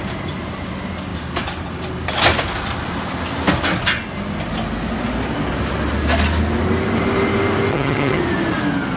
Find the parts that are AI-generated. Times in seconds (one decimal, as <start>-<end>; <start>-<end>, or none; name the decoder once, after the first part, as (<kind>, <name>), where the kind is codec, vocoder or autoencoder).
7.7-8.2 (vocoder, HiFi-GAN)